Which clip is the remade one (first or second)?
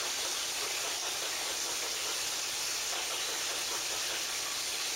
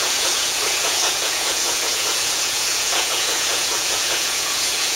second